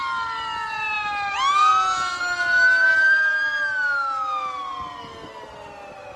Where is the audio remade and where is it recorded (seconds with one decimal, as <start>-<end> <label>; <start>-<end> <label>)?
0.0-6.2 recorded